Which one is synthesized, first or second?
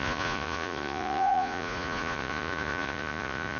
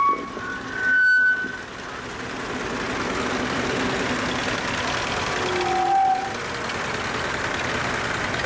first